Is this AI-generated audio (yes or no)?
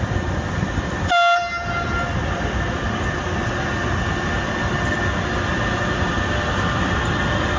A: no